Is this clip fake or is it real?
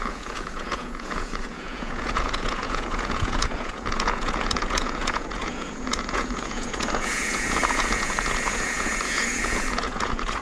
fake